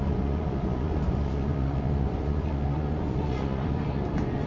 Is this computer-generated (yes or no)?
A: yes